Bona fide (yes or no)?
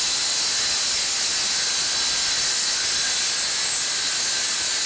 yes